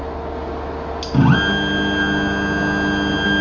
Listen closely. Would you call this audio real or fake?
real